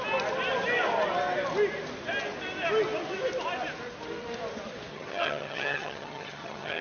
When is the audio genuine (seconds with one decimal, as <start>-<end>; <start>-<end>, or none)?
0.0-4.9